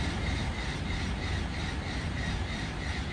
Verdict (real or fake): real